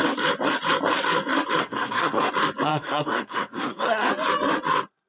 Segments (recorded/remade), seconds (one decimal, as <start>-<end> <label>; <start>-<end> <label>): 0.0-1.6 recorded; 1.6-2.3 remade; 2.3-2.7 recorded; 2.7-4.1 remade; 4.1-5.1 recorded